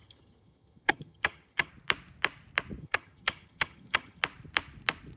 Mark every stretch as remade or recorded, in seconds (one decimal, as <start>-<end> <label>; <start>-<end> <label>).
0.0-1.7 remade; 1.7-2.8 recorded; 2.8-4.2 remade; 4.2-5.2 recorded